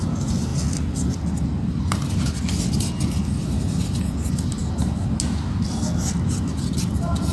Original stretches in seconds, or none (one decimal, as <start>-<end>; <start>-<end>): 0.0-7.3